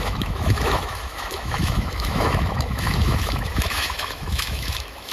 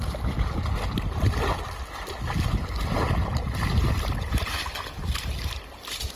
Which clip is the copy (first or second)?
first